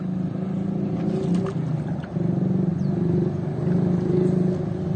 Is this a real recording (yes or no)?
yes